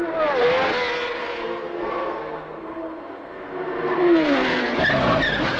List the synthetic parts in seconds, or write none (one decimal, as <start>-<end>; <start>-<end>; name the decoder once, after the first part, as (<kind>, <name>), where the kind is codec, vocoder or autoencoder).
1.2-4.6 (codec, SNAC)